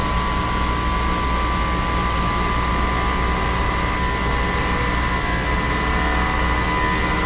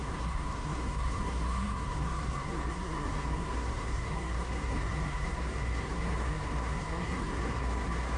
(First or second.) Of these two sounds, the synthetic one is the second